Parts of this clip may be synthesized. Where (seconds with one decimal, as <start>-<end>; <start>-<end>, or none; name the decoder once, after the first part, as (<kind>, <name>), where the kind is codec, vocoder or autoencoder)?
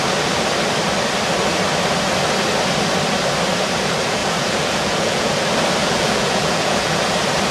4.2-5.3 (vocoder, Vocos); 5.8-7.0